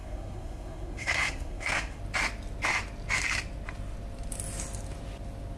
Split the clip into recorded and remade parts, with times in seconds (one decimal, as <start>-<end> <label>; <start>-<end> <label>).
0.0-2.0 remade; 2.0-5.6 recorded